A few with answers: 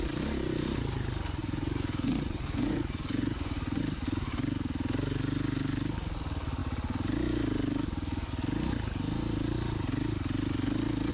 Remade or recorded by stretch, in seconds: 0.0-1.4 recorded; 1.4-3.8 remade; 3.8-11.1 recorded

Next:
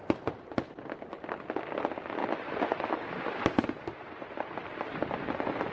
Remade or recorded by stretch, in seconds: 0.0-2.2 recorded; 2.2-5.3 remade; 5.3-5.7 recorded